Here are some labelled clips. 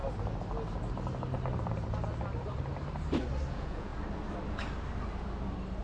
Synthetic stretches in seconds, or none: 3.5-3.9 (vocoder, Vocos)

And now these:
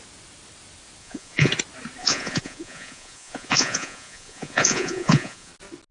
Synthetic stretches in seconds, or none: 1.0-1.5 (vocoder, Vocos); 2.0-5.5

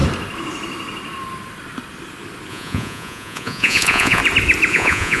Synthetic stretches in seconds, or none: 2.5-4.2 (vocoder, Vocos); 4.7-5.2

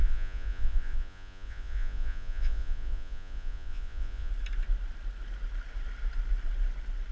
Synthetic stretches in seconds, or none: 0.0-4.3 (vocoder, Vocos)

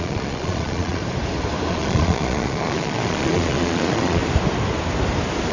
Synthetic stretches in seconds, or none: 0.0-1.0 (vocoder, Vocos); 1.7-4.2